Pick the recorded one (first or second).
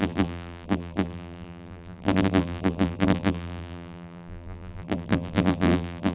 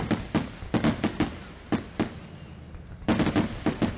second